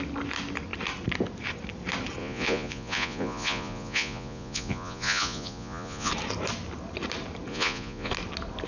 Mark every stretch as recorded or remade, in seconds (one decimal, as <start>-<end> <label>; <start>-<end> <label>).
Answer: 0.0-2.2 recorded; 2.2-6.1 remade; 6.1-7.5 recorded; 7.5-8.1 remade; 8.1-8.7 recorded